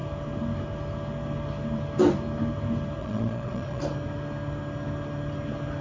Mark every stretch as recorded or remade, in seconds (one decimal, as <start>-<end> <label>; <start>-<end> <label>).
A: 0.0-3.0 recorded; 3.0-3.8 remade; 3.8-5.8 recorded